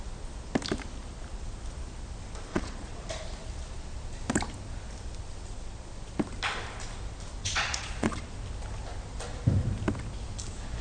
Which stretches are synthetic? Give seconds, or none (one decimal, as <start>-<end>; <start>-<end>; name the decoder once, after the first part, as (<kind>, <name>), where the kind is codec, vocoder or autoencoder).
2.5-3.1 (vocoder, Vocos); 7.4-8.3